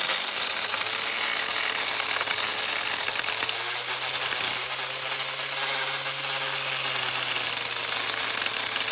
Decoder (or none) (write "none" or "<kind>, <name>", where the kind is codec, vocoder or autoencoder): none